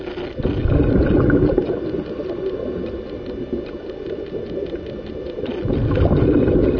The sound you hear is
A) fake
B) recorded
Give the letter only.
B